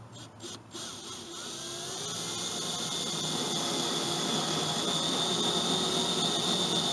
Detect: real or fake real